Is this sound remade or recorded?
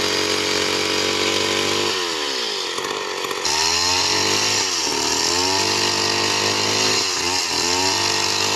recorded